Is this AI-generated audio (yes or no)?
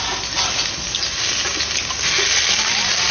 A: no